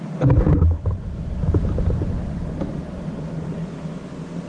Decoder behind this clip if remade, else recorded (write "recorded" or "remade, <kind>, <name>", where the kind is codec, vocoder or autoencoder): recorded